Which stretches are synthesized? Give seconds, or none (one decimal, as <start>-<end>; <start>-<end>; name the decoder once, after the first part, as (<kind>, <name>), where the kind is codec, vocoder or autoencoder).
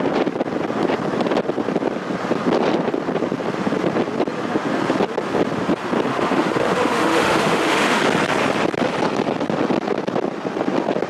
6.1-8.0 (autoencoder, DAC-VAE)